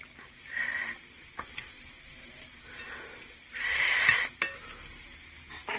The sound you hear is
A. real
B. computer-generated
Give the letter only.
A